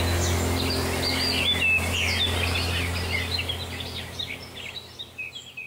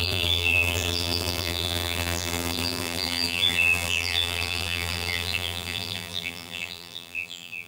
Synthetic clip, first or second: second